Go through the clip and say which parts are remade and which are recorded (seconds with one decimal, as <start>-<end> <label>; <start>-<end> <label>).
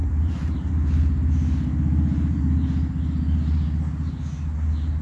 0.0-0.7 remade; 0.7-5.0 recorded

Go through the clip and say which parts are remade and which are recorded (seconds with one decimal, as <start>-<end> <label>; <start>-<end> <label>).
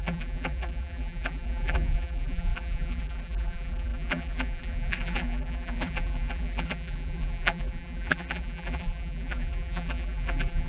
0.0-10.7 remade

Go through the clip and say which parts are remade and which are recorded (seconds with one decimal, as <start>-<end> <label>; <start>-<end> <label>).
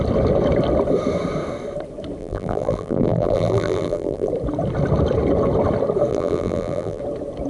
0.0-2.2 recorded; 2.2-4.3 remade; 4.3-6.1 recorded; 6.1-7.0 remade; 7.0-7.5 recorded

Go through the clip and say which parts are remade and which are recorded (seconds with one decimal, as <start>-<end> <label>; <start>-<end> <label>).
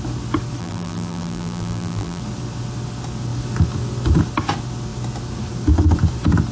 0.0-0.6 recorded; 0.6-2.2 remade; 2.2-6.5 recorded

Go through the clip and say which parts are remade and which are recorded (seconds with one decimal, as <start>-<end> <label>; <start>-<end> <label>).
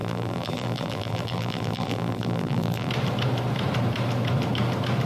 0.0-2.9 remade; 2.9-5.1 recorded